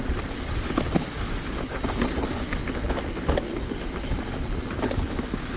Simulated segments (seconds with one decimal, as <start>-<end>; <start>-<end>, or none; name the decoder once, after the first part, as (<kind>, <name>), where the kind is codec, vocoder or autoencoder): none